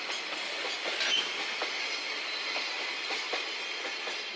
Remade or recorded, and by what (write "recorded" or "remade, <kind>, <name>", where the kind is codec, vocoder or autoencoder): recorded